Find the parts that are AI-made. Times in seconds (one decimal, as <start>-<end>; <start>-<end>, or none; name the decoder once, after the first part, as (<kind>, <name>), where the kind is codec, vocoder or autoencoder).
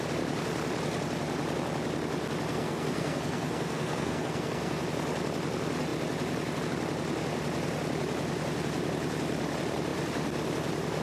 2.5-4.8 (codec, SNAC)